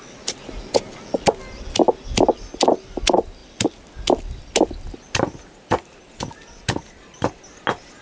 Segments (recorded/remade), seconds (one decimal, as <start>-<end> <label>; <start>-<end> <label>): 0.0-8.0 recorded